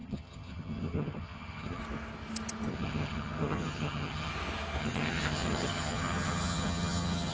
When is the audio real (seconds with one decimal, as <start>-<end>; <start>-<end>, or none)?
1.8-2.7; 4.3-4.8